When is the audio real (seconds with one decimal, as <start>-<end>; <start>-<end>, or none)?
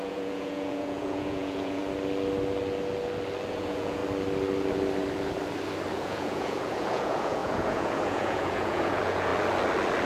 1.8-3.5; 4.0-5.9; 9.3-10.1